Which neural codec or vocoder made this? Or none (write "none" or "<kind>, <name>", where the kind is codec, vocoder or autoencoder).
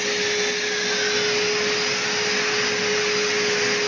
none